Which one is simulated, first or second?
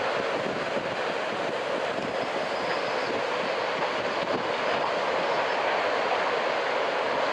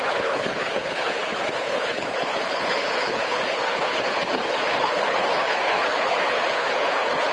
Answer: second